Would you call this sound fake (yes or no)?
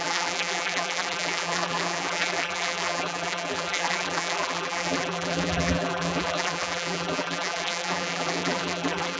yes